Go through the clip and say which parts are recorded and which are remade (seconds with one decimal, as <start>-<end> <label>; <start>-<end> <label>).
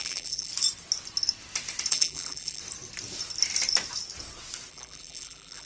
0.0-0.5 remade; 0.5-1.9 recorded; 1.9-2.6 remade; 2.6-4.7 recorded; 4.7-5.7 remade